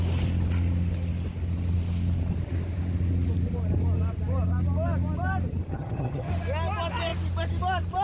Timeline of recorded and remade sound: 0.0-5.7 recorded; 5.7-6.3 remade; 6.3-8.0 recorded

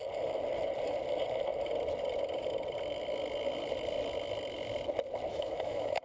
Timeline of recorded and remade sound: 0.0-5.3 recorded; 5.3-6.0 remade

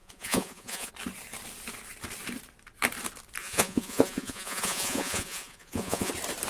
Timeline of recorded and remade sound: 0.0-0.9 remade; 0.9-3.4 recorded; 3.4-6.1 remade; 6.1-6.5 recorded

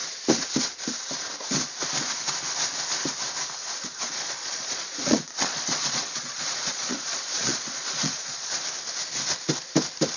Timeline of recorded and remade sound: 0.0-3.6 recorded; 3.6-8.7 remade; 8.7-10.2 recorded